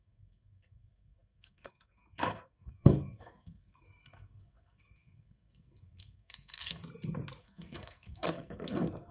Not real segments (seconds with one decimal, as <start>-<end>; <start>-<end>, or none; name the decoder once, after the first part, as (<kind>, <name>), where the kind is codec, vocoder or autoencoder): 0.0-6.8 (codec, SNAC); 7.4-9.1